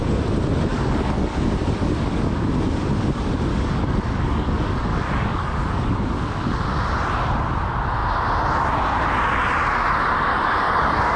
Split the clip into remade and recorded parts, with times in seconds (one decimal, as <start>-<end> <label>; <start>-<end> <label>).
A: 0.0-0.7 recorded; 0.7-2.5 remade; 2.5-3.5 recorded; 3.5-6.6 remade; 6.6-10.3 recorded; 10.3-11.2 remade